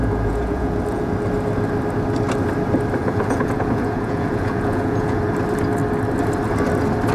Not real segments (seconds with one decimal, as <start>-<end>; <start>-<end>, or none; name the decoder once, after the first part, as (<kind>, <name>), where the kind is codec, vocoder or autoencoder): 0.0-1.1 (vocoder, Vocos); 3.0-5.2